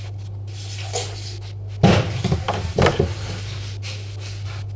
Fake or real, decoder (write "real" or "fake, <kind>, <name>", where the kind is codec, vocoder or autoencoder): real